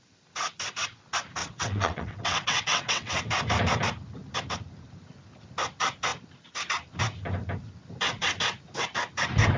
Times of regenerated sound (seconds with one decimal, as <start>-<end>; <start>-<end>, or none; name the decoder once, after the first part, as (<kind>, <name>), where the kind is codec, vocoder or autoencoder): 1.4-3.2 (vocoder, WaveNeXt)